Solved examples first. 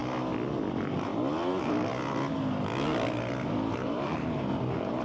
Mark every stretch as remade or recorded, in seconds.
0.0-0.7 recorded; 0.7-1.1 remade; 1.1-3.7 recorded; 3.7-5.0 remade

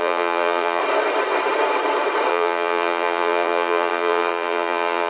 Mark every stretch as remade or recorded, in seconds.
0.0-0.8 remade; 0.8-2.3 recorded; 2.3-5.1 remade

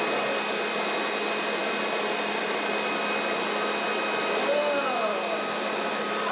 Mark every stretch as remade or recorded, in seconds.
0.0-6.3 recorded

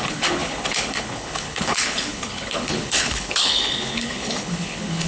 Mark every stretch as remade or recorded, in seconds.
0.0-5.1 remade

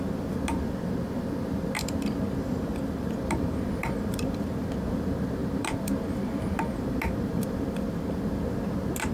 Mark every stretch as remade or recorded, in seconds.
0.0-9.1 remade

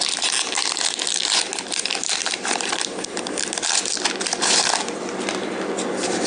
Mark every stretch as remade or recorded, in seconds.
0.0-6.3 recorded